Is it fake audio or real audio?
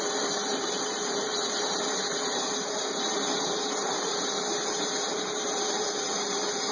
fake